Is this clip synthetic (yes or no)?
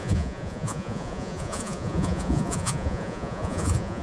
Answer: yes